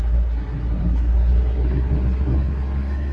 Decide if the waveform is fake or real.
fake